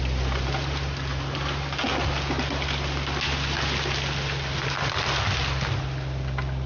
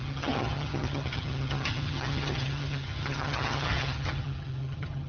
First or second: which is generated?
second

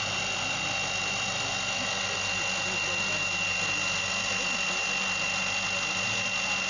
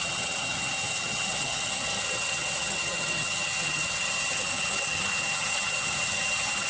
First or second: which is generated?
second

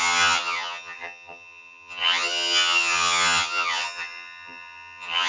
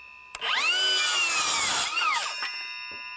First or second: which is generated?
first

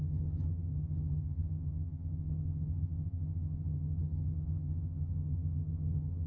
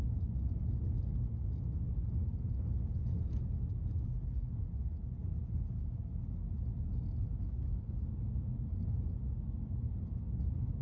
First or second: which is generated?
first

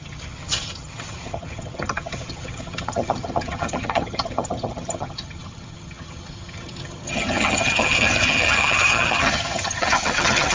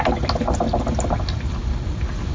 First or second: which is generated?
first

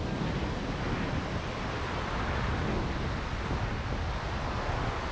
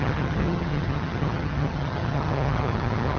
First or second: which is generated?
second